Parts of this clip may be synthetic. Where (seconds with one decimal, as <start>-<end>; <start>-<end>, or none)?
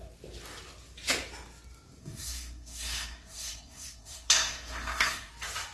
2.0-5.3